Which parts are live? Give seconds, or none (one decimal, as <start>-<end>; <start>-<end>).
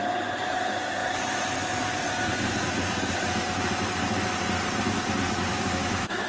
0.0-5.5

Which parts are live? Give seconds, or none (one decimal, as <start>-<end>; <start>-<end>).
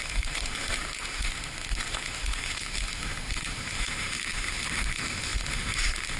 none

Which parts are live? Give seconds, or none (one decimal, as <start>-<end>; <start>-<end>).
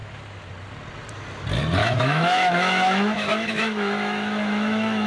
0.0-1.8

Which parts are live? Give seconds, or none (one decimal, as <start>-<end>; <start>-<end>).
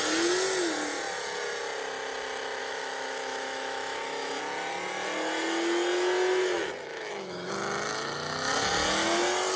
0.0-2.6; 4.4-6.9; 7.5-9.6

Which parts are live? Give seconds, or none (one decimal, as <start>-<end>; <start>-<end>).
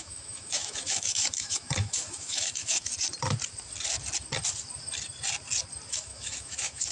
2.9-5.9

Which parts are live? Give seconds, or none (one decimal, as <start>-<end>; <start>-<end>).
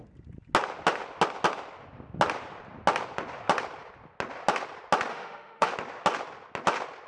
0.0-5.1; 5.7-7.1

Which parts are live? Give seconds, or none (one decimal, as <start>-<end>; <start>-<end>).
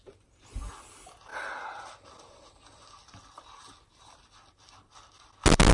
0.0-5.7